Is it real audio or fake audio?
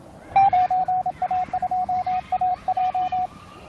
fake